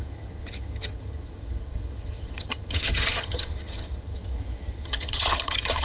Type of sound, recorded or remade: remade